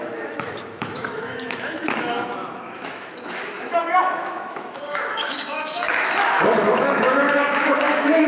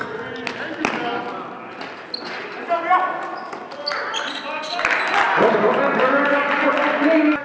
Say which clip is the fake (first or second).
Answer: first